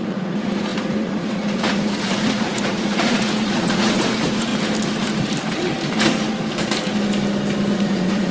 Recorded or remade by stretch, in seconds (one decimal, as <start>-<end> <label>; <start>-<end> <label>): 0.0-4.5 remade; 4.5-7.7 recorded; 7.7-8.3 remade